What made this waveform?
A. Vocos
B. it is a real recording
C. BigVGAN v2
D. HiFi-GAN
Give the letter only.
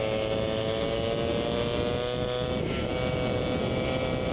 B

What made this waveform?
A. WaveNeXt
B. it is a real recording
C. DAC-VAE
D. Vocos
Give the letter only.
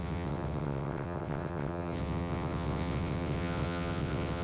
A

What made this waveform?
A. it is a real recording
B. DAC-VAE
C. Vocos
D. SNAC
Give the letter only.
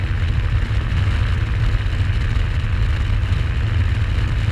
A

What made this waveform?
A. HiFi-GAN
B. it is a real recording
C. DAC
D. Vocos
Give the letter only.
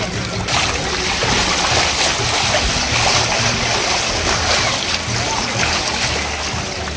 B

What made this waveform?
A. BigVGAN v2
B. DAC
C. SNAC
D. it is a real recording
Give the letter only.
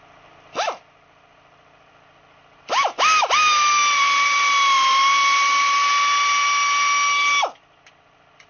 D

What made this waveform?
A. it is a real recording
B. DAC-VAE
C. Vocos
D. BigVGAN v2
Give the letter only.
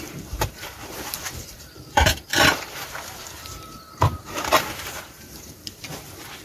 D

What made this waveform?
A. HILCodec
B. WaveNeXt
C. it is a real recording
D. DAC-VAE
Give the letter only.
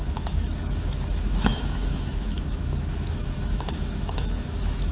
D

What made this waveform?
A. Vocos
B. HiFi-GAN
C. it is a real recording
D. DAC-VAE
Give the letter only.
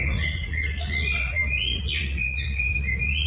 A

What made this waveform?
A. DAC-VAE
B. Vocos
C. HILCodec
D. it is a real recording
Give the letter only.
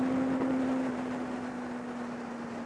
D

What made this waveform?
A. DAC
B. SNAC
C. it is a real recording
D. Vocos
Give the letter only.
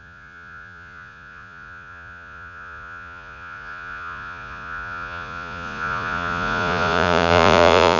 D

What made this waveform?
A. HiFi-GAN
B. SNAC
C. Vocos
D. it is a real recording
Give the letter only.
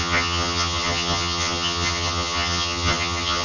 A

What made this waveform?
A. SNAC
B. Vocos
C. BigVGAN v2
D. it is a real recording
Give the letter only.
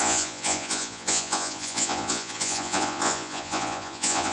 B